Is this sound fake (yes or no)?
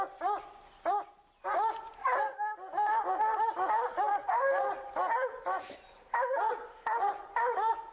no